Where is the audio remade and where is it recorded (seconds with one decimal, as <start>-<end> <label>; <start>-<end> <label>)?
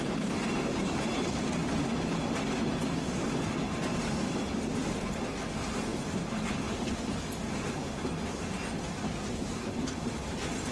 0.0-10.7 recorded